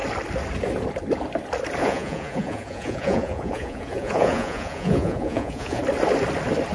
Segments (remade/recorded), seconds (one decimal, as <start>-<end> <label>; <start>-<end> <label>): 0.0-1.8 recorded; 1.8-5.8 remade; 5.8-6.7 recorded